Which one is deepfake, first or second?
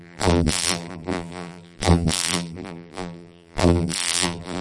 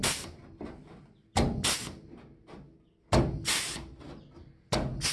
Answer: first